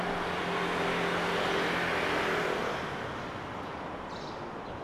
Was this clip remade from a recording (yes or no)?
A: no